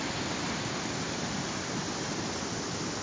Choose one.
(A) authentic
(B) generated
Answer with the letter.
A